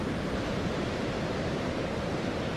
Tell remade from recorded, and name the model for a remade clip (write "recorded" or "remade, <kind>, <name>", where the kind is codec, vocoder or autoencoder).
remade, vocoder, BigVGAN v2